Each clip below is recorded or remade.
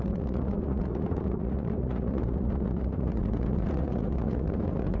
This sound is remade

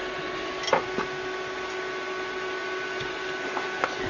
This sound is recorded